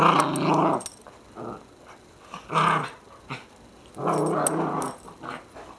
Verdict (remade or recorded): recorded